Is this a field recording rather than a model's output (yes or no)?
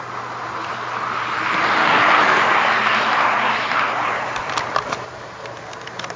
yes